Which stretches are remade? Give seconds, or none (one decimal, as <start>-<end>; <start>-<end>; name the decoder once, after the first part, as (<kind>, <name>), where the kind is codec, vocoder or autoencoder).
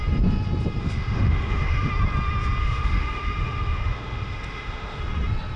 0.8-1.9 (autoencoder, DAC-VAE); 2.6-5.0